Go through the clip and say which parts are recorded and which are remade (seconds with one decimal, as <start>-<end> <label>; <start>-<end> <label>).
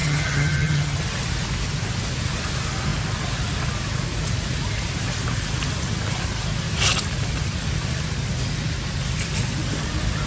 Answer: 0.0-1.0 remade; 1.0-10.3 recorded